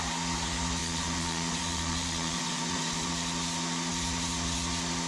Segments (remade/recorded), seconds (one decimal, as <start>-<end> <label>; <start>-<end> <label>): 0.0-0.8 recorded; 0.8-3.1 remade; 3.1-5.1 recorded